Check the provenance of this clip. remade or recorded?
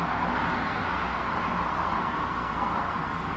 remade